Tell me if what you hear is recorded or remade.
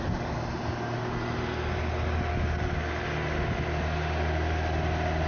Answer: recorded